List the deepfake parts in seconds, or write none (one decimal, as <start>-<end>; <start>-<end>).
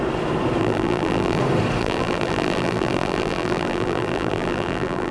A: 0.6-1.4; 1.8-5.1